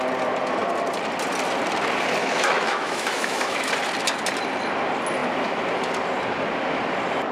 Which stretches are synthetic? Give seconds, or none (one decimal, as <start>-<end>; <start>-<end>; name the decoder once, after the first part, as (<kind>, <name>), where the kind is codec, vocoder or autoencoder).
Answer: 2.2-3.7 (autoencoder, DAC-VAE)